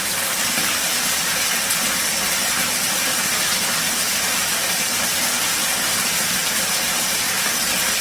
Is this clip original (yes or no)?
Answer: yes